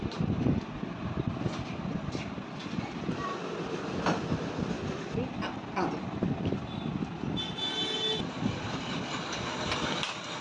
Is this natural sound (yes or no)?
yes